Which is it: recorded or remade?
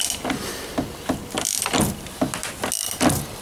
recorded